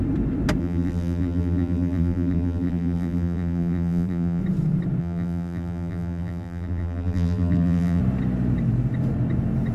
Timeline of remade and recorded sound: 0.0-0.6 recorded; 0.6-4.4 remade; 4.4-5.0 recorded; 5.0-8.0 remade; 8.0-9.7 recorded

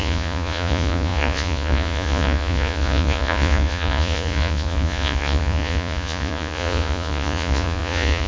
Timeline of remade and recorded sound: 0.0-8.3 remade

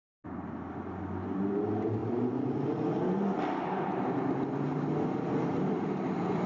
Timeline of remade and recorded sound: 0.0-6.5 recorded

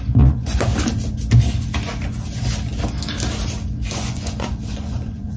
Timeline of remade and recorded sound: 0.0-0.7 remade; 0.7-3.9 recorded; 3.9-5.4 remade

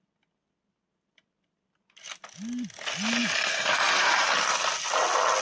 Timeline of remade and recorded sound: 0.0-5.4 recorded

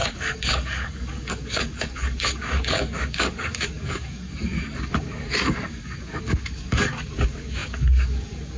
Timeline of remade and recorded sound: 0.0-8.6 remade

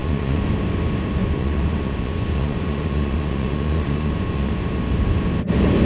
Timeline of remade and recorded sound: 0.0-0.5 remade; 0.5-1.2 recorded; 1.2-4.7 remade; 4.7-5.8 recorded

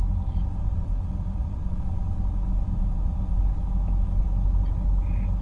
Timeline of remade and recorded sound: 0.0-2.6 recorded; 2.6-3.2 remade; 3.2-5.4 recorded